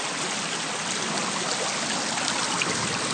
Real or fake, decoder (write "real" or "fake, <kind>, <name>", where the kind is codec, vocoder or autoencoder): real